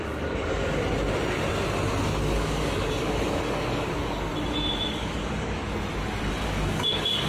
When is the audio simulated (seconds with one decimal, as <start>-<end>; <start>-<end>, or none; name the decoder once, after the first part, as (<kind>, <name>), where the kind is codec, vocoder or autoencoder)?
0.0-0.8 (codec, DAC); 2.2-4.3; 4.9-5.6; 6.2-7.3